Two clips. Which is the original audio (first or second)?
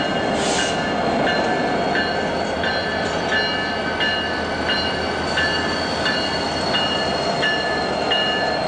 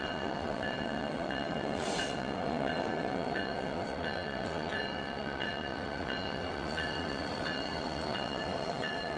first